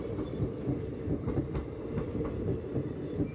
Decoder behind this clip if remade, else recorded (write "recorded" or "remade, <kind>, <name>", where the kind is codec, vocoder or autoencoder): recorded